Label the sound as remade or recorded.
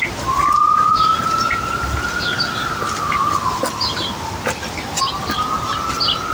recorded